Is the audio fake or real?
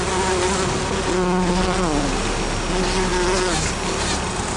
real